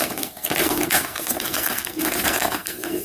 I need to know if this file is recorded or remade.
remade